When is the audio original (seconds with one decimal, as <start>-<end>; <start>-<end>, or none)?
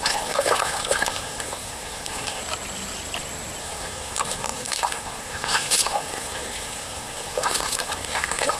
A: 2.4-3.6